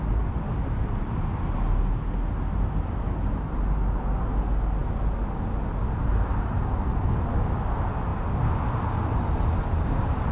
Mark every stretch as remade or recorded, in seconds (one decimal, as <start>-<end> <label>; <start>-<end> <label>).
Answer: 0.0-10.3 recorded

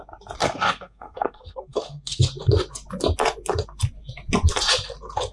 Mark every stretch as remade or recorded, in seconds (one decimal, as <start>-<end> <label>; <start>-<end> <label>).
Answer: 0.0-0.4 recorded; 0.4-2.2 remade; 2.2-5.3 recorded